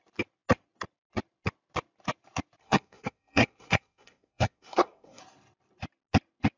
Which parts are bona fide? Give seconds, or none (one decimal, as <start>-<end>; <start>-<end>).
0.0-2.6; 5.2-6.6